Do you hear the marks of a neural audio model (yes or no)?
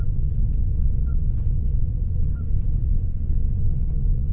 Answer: yes